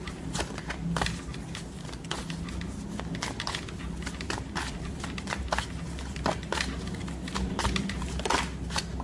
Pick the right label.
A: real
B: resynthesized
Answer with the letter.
A